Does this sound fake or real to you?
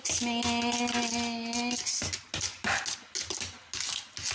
real